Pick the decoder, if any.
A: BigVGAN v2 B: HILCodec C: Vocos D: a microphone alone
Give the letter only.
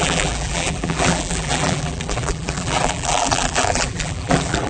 A